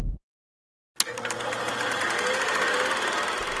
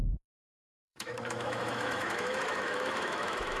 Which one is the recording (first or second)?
first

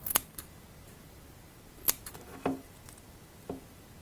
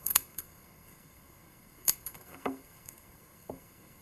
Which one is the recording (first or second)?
first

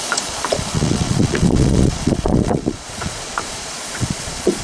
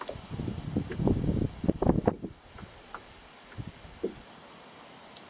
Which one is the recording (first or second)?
second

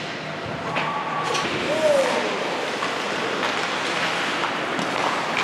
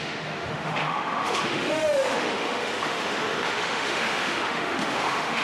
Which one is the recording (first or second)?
first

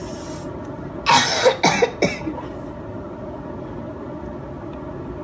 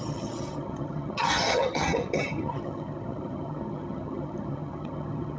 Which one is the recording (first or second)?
first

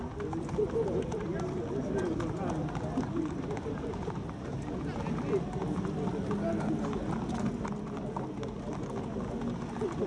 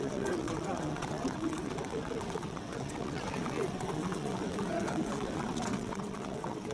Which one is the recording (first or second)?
first